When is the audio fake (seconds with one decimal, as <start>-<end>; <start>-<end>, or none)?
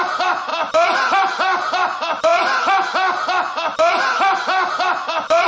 0.0-0.5; 1.1-2.3; 4.7-5.5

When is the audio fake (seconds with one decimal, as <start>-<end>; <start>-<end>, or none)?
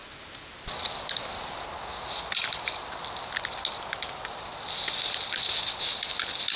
none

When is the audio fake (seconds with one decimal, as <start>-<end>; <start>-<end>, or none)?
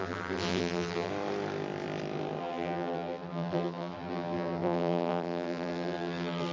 0.0-1.1; 2.4-6.5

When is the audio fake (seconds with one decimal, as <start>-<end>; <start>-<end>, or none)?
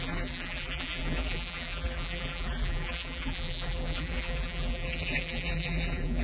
0.0-6.2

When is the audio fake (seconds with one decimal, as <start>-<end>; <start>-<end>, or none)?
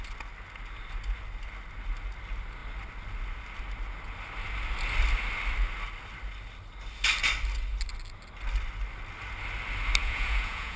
10.0-10.8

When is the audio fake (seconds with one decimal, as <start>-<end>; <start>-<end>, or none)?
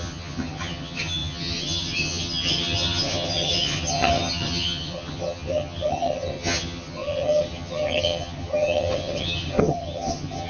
0.0-10.5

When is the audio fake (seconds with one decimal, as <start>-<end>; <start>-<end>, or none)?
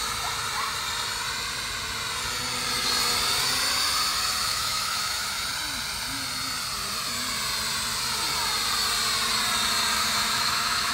4.5-5.5; 10.0-10.9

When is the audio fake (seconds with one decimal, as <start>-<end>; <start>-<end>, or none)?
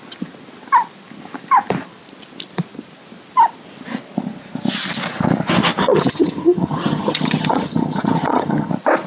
5.8-8.7